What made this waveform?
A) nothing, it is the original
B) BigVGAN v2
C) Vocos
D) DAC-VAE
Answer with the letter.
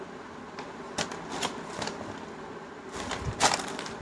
A